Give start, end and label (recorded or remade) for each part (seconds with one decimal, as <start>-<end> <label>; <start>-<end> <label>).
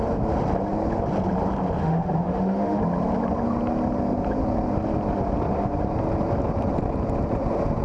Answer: 0.0-1.8 recorded; 1.8-2.8 remade; 2.8-7.8 recorded